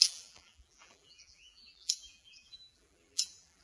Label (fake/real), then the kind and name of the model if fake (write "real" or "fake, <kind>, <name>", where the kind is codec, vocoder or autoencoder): fake, vocoder, BigVGAN v2